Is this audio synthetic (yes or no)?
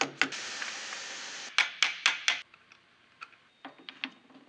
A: no